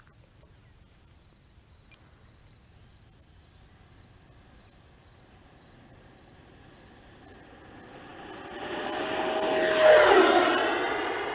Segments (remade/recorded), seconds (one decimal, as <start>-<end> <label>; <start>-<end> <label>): 0.0-11.3 recorded